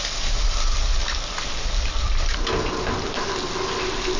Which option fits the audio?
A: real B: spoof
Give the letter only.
A